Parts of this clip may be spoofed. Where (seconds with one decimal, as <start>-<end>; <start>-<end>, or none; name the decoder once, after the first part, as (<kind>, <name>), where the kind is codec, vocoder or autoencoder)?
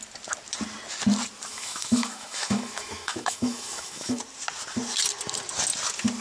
1.5-4.2 (autoencoder, DAC-VAE)